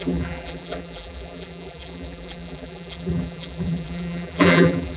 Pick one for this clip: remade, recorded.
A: remade